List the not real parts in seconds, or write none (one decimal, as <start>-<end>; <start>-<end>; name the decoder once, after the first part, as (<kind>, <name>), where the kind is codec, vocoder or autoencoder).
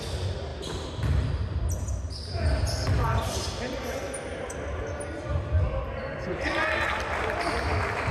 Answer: none